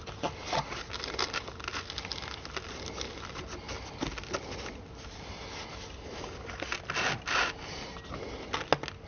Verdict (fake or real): real